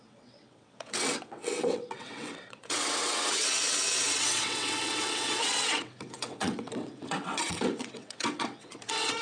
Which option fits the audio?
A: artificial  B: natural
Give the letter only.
A